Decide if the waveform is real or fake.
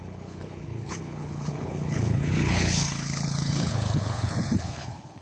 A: fake